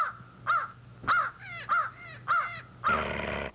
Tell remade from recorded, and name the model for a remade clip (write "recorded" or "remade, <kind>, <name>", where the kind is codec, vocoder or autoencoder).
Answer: recorded